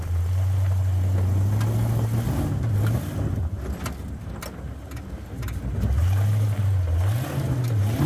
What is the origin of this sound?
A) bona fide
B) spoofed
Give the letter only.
A